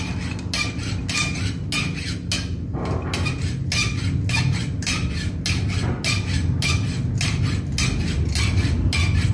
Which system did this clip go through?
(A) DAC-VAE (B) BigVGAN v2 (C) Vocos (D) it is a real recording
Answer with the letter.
D